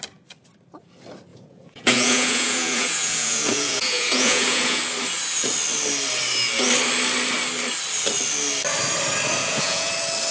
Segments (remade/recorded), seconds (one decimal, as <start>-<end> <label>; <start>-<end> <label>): 0.0-1.3 recorded; 1.3-4.8 remade; 4.8-9.4 recorded; 9.4-9.9 remade; 9.9-10.3 recorded